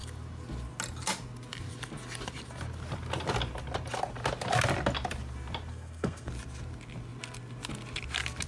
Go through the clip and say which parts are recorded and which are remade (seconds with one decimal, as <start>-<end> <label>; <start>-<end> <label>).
0.0-5.7 recorded; 5.7-6.3 remade; 6.3-8.5 recorded